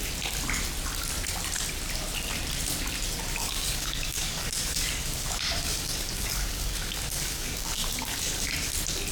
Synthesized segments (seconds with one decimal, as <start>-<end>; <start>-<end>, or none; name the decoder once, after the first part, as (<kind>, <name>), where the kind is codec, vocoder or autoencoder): 3.4-8.7 (codec, DAC)

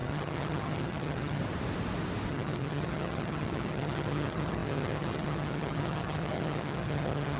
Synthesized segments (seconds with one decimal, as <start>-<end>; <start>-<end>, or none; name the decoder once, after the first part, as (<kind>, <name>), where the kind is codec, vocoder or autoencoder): 0.0-1.4 (vocoder, HiFi-GAN); 2.3-7.4

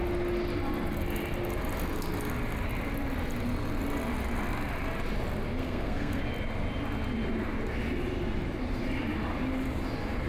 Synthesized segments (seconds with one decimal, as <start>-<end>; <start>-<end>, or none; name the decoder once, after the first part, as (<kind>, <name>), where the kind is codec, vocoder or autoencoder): 5.6-6.2 (codec, SNAC)

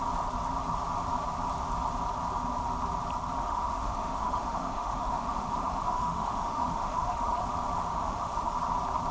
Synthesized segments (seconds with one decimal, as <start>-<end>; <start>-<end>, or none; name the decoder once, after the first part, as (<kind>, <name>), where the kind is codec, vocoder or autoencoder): 3.4-7.4 (autoencoder, DAC-VAE); 7.9-8.5

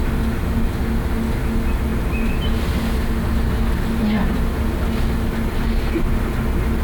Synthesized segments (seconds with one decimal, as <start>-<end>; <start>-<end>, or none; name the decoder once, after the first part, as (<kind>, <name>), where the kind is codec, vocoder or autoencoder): none